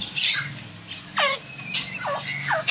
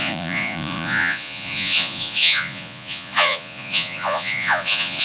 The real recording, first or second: first